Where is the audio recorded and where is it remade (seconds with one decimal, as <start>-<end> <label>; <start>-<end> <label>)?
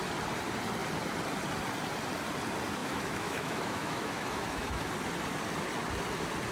0.0-2.8 recorded; 2.8-4.9 remade; 4.9-6.5 recorded